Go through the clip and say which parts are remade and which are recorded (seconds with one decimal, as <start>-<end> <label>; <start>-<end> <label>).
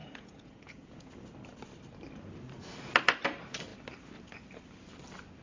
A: 0.0-1.1 remade; 1.1-5.4 recorded